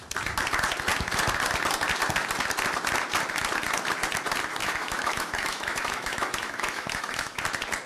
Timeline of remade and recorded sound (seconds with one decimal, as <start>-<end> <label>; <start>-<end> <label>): 0.0-4.6 recorded; 4.6-7.4 remade; 7.4-7.9 recorded